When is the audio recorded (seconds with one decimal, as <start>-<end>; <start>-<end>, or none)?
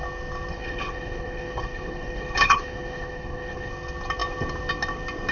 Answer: 0.0-0.5; 3.7-5.3